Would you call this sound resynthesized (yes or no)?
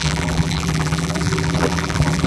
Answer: yes